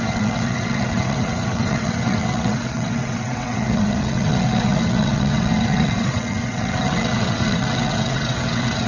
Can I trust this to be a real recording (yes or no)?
no